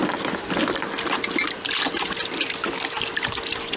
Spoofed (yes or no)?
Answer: no